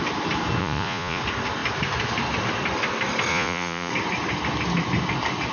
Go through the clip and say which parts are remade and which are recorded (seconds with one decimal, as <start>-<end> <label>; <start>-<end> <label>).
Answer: 0.0-0.6 recorded; 0.6-1.2 remade; 1.2-3.3 recorded; 3.3-3.9 remade; 3.9-5.5 recorded